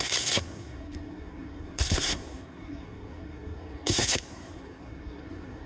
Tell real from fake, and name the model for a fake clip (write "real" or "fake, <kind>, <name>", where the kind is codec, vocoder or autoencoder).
fake, codec, SNAC